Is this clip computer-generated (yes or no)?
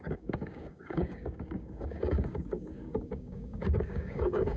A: yes